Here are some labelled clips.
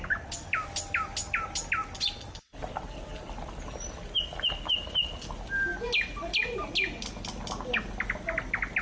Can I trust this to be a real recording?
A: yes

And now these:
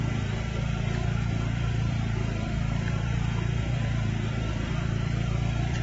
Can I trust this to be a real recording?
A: no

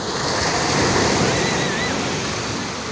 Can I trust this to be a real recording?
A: yes